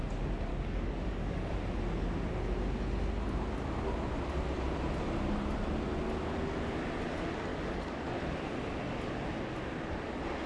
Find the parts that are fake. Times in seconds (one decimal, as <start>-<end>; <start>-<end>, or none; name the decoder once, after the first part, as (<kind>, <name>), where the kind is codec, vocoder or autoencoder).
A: 0.5-1.5 (codec, DAC); 7.5-8.1